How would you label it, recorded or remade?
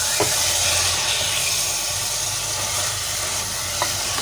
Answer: recorded